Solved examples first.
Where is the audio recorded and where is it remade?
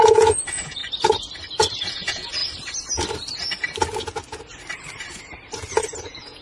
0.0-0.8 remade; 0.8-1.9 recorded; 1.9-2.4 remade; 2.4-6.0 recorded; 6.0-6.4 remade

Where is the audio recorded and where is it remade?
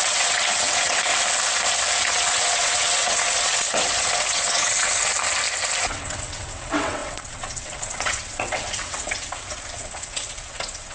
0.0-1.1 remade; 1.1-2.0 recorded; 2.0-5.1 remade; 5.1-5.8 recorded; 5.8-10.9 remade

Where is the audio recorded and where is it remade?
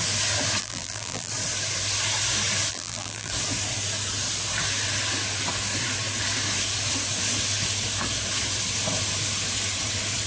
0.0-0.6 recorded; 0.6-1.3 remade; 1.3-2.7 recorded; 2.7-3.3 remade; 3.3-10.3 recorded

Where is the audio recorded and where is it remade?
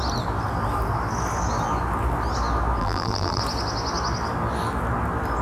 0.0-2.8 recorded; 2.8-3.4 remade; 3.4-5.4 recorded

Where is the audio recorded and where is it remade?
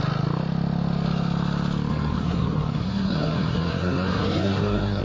0.0-1.9 recorded; 1.9-5.0 remade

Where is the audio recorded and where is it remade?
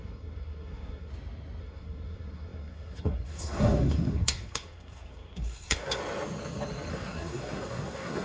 0.0-1.1 remade; 1.1-1.6 recorded; 1.6-6.0 remade; 6.0-6.9 recorded; 6.9-8.2 remade